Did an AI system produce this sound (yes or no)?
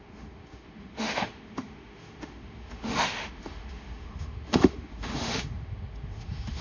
yes